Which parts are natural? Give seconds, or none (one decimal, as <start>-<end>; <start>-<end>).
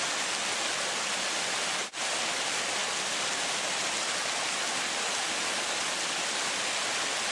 0.0-7.3